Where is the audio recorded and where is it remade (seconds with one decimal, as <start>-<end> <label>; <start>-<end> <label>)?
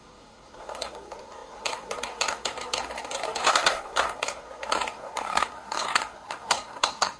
0.0-7.2 remade